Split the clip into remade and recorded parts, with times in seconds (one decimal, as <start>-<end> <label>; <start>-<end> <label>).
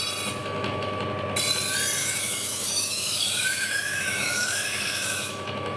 0.0-0.4 recorded; 0.4-1.0 remade; 1.0-2.0 recorded; 2.0-5.8 remade